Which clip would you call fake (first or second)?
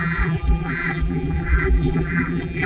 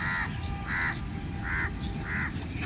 first